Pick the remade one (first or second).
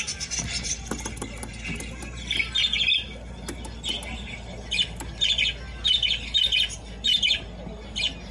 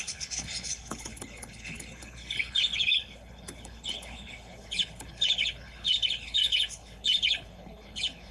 second